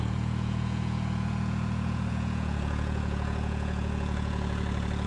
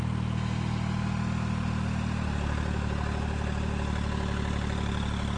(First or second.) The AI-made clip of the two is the first